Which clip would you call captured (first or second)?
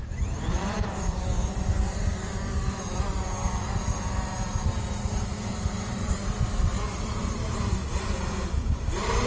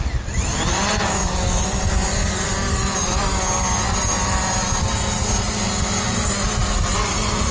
second